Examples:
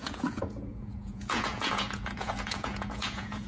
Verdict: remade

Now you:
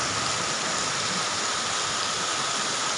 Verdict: recorded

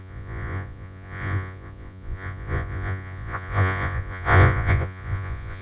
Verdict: remade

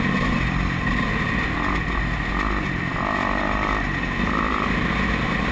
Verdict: recorded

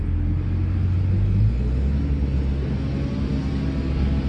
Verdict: recorded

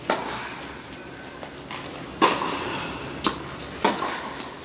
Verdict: recorded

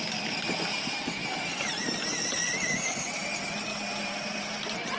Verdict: recorded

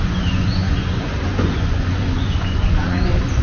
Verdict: remade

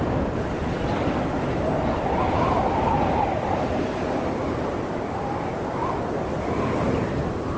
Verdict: recorded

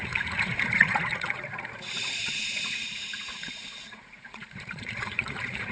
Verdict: remade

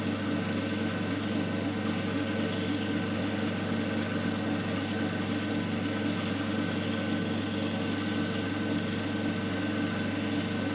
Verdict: recorded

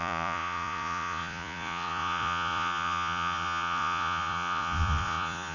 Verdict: remade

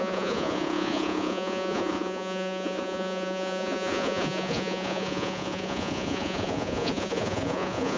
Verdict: remade